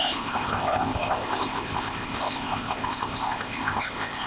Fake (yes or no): yes